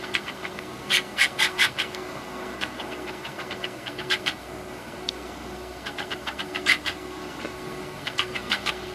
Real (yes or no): no